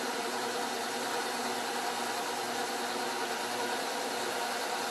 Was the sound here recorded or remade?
recorded